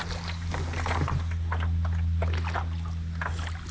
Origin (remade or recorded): recorded